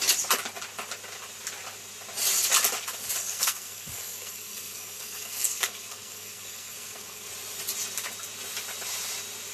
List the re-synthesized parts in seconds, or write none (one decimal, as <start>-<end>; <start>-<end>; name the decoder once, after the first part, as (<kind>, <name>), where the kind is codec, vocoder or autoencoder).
3.2-7.3 (codec, SNAC)

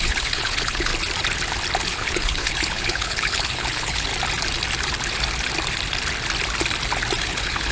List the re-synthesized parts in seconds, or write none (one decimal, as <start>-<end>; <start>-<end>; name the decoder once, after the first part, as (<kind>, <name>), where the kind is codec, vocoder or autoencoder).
0.0-0.9 (codec, HILCodec); 1.8-4.1; 7.2-7.7

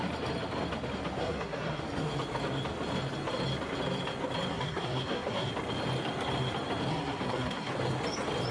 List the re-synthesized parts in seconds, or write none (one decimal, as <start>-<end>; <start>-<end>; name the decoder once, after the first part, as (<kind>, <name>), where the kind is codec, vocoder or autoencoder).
1.2-1.8 (codec, SNAC); 4.5-5.5; 6.9-7.7

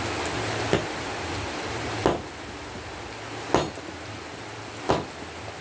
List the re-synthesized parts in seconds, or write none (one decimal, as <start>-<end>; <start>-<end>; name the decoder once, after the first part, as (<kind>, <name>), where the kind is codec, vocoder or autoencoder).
none